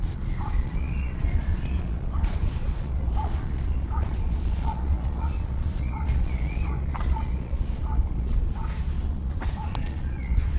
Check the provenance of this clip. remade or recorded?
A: remade